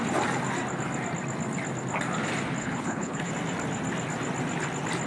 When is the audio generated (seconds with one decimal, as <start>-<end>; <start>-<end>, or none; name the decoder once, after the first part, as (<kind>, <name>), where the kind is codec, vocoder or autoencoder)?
2.6-3.3 (codec, HILCodec)